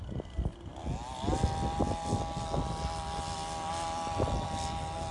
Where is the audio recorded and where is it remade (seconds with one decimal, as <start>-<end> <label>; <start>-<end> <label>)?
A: 0.0-5.1 recorded